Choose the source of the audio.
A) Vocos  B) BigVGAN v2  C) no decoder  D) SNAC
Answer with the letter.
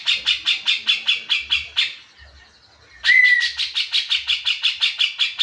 C